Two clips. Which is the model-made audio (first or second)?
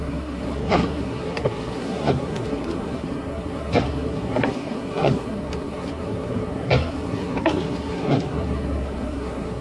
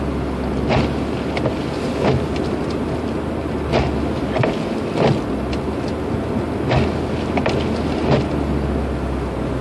first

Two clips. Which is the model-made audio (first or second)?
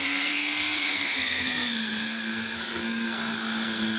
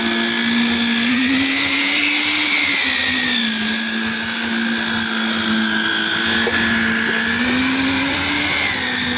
first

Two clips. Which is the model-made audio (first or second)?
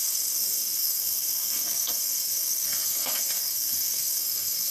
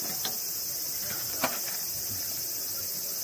first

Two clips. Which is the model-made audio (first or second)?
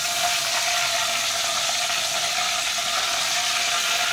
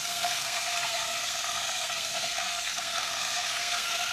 second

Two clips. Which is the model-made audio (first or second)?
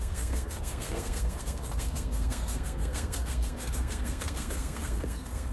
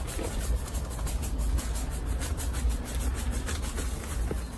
first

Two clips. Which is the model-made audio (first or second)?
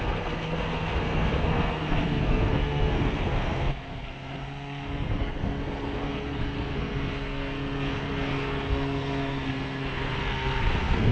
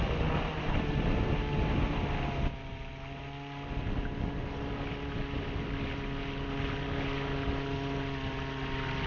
first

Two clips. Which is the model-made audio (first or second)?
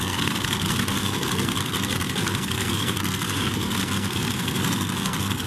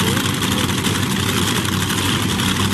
first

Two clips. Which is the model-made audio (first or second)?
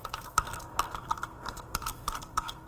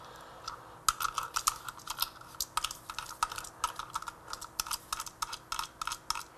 first